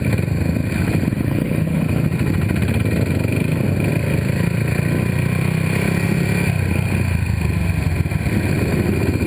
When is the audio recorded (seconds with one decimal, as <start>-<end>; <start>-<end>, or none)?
0.0-1.1; 1.8-9.3